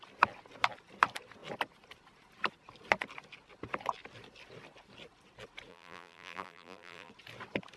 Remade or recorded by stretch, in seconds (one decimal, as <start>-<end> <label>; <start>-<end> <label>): 0.0-5.7 recorded; 5.7-7.1 remade; 7.1-7.8 recorded